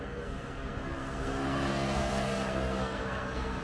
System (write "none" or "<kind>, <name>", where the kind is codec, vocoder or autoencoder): codec, SNAC